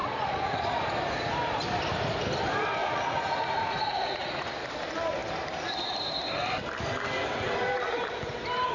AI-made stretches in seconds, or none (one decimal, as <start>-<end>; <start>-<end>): 0.0-0.8; 2.8-4.5